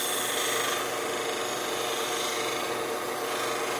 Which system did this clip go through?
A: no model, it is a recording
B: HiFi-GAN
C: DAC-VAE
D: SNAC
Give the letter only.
A